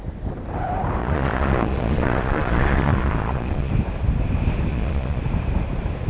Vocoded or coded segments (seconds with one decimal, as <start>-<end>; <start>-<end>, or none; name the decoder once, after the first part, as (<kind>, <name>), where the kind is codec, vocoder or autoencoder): 1.0-3.7 (vocoder, Vocos); 4.7-5.2